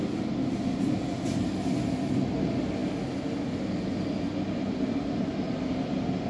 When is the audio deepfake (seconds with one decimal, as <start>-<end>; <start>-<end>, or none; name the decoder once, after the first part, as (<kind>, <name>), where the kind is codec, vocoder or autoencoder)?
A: none